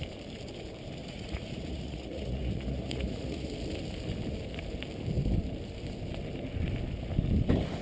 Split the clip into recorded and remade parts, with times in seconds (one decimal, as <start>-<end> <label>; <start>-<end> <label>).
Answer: 0.0-1.0 recorded; 1.0-3.5 remade; 3.5-7.8 recorded